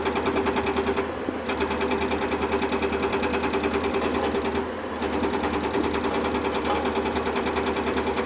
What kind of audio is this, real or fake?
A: real